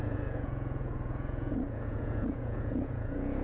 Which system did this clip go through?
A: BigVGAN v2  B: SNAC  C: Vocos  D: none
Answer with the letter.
C